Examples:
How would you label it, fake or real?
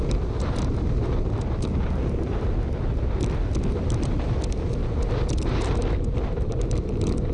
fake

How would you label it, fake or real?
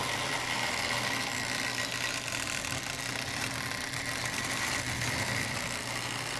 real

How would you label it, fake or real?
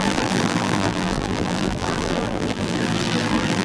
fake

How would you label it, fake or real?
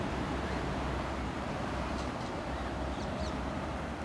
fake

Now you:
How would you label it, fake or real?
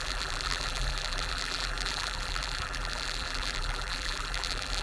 fake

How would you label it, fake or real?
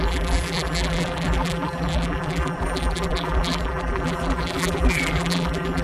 fake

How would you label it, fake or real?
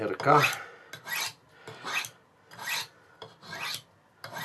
real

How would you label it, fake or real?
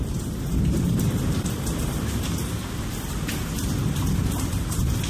fake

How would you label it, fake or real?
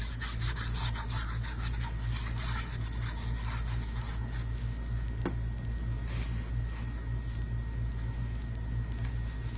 real